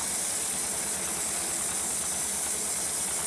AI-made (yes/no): no